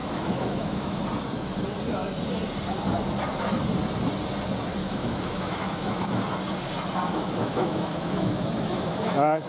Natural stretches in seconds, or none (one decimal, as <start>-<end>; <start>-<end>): 1.0-4.8; 6.2-7.1